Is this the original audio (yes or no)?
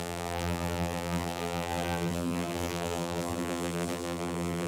no